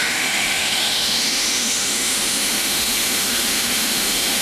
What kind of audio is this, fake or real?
fake